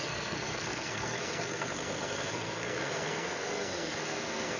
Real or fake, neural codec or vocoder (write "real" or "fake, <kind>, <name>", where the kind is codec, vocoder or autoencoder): fake, codec, SNAC